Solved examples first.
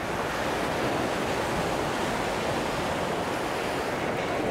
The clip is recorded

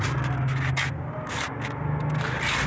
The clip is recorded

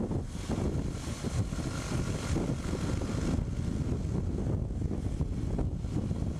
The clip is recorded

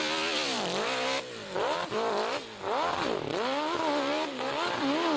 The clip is recorded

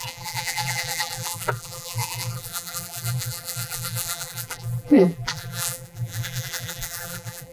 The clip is remade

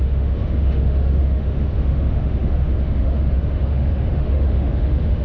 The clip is remade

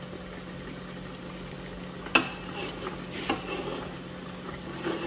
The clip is recorded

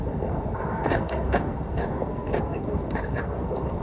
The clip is remade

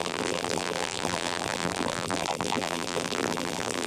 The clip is remade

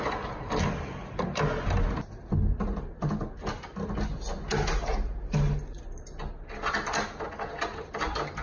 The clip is recorded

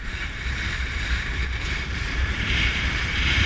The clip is remade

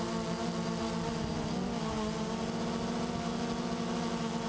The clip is recorded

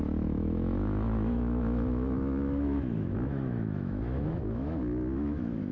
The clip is remade